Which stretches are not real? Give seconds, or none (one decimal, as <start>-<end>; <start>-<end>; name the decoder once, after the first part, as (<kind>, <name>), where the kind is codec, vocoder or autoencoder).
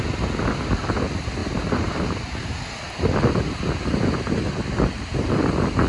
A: 1.4-2.5 (vocoder, BigVGAN v2)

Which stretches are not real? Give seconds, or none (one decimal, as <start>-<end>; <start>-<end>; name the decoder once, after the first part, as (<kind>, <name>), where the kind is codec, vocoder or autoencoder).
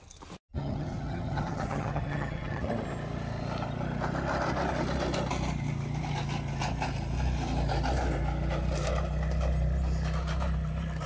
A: 0.5-2.7 (vocoder, HiFi-GAN)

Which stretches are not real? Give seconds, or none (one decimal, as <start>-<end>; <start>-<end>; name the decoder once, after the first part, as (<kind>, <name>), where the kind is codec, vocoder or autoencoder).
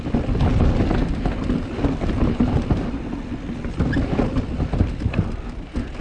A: none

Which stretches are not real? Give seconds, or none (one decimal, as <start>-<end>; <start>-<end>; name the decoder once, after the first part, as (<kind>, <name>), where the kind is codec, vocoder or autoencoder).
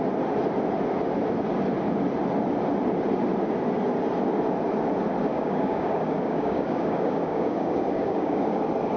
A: 5.3-8.6 (codec, DAC)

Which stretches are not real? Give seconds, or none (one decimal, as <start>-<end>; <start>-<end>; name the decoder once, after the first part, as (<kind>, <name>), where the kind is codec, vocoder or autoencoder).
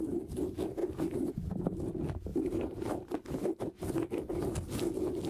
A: 0.8-1.3 (vocoder, BigVGAN v2); 2.3-3.9; 4.3-4.8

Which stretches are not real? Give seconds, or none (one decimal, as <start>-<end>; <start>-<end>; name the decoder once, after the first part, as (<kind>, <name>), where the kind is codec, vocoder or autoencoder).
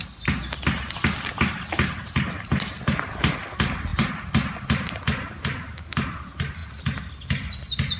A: none